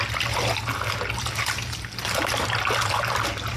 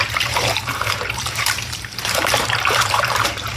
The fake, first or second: second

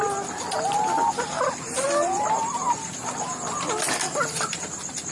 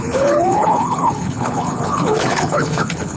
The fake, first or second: second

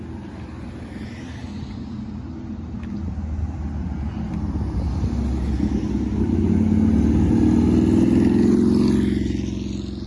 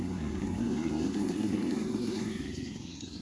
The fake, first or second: second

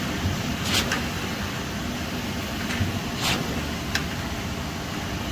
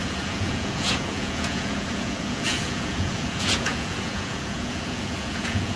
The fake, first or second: second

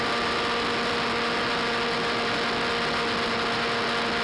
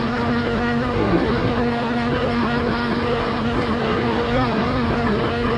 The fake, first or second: second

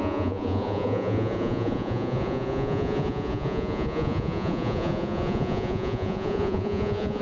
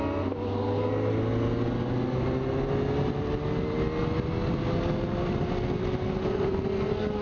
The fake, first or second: first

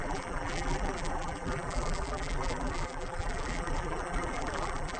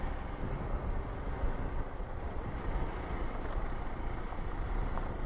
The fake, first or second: first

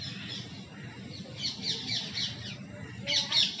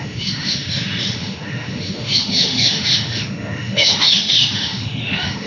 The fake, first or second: second